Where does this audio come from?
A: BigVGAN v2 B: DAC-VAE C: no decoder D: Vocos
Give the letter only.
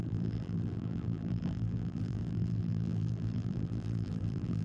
A